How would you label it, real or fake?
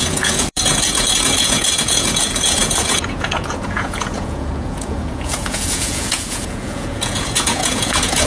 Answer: fake